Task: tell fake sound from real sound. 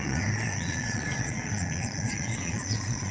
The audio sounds fake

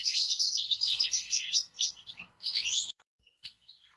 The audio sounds fake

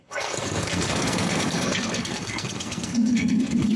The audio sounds fake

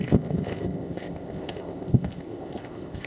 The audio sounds fake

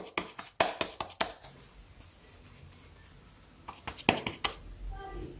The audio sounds real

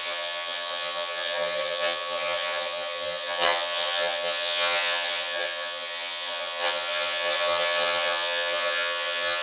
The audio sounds fake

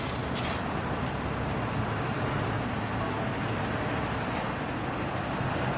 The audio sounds real